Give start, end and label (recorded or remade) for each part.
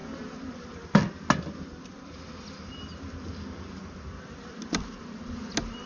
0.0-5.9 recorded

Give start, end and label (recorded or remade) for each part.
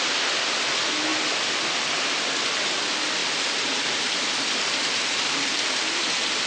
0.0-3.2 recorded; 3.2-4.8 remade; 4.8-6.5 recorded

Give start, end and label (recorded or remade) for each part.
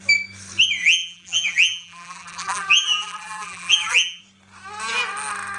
0.0-0.8 recorded; 0.8-4.2 remade; 4.2-5.6 recorded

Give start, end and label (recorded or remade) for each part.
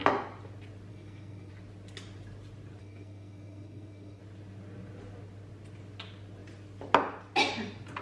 0.0-0.9 recorded; 0.9-1.5 remade; 1.5-2.8 recorded; 2.8-4.2 remade; 4.2-8.0 recorded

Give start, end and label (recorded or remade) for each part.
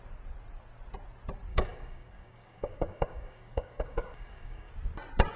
0.0-1.5 recorded; 1.5-4.7 remade; 4.7-5.4 recorded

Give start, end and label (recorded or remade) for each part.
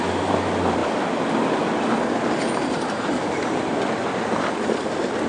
0.0-5.3 recorded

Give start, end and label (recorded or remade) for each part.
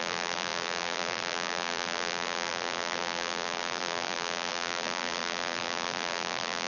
0.0-6.7 remade